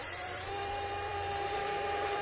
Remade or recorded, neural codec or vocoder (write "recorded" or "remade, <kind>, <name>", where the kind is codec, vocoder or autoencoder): remade, vocoder, BigVGAN v2